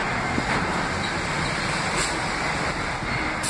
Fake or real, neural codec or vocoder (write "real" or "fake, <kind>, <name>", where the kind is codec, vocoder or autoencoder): real